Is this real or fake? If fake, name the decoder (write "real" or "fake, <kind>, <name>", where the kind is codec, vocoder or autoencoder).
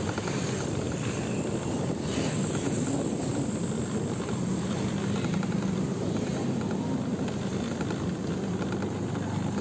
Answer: real